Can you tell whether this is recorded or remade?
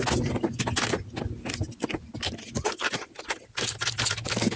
recorded